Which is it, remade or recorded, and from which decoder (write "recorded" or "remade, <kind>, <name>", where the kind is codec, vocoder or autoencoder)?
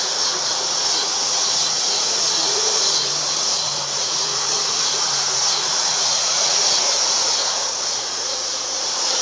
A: remade, vocoder, Vocos